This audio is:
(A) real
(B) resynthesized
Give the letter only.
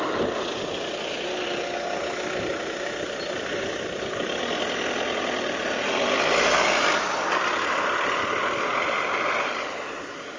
A